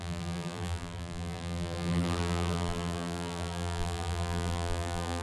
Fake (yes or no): yes